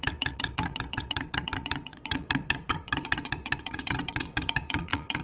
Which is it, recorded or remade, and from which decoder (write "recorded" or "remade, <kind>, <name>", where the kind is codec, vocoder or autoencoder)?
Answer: remade, vocoder, WaveNeXt